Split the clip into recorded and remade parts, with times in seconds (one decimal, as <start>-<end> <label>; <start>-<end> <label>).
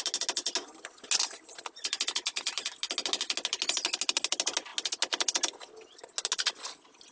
0.0-7.1 recorded